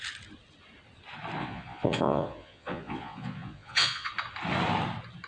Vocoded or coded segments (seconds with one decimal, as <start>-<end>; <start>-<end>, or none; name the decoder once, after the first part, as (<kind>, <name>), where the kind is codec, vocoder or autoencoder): 1.4-4.1 (vocoder, Vocos)

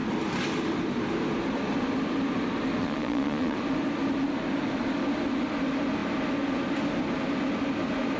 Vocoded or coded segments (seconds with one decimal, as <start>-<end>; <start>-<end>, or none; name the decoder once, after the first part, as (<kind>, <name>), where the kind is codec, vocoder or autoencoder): 2.8-3.6 (vocoder, Vocos)